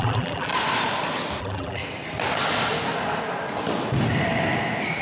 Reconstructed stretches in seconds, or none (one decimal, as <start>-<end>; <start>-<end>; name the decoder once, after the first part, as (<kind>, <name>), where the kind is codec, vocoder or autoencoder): 0.0-0.5 (vocoder, BigVGAN v2); 1.4-1.8